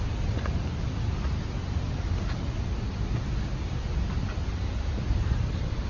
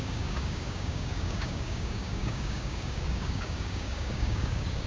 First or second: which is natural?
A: first